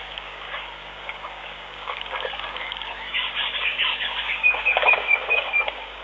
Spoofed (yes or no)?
yes